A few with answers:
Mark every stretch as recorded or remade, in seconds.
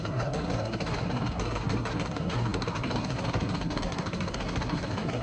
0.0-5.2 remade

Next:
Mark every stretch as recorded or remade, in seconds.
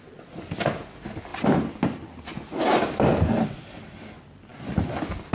0.0-5.3 recorded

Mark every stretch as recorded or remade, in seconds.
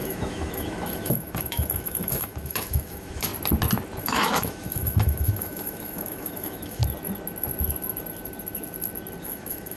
0.0-3.3 remade; 3.3-4.0 recorded; 4.0-6.8 remade; 6.8-9.2 recorded; 9.2-9.8 remade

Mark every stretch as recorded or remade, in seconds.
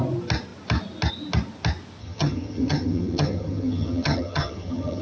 0.0-2.0 recorded; 2.0-5.0 remade